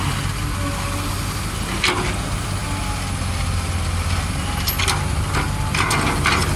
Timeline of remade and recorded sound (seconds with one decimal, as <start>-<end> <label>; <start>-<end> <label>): 0.0-6.6 recorded